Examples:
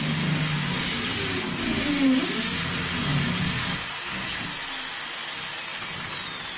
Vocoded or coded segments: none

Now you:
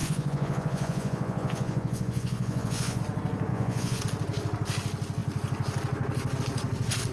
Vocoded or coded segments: 0.0-3.0 (vocoder, Vocos); 3.5-4.0

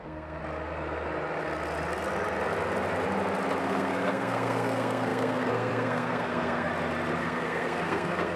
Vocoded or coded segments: 0.0-0.4 (codec, SNAC); 3.6-6.7; 7.2-8.4

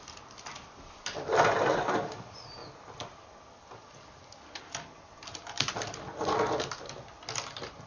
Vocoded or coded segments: none

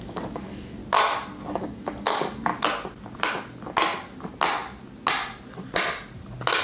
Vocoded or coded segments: 0.0-0.8 (codec, DAC); 1.5-2.5

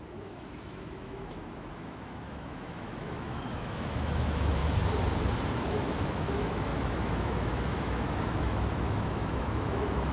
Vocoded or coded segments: 0.0-4.6 (autoencoder, DAC-VAE); 5.5-10.1